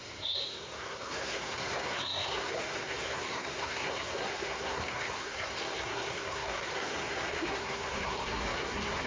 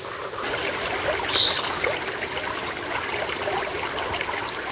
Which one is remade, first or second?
first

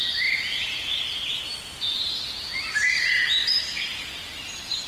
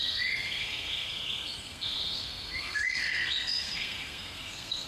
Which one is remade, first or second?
second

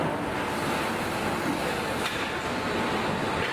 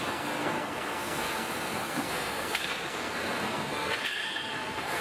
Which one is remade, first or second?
second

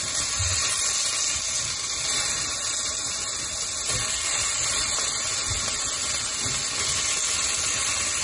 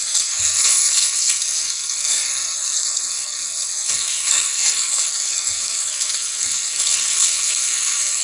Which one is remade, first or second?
second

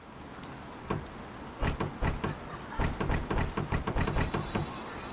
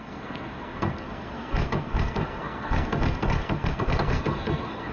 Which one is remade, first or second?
second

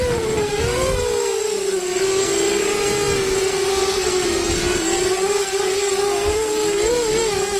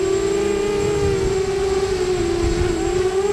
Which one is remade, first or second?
first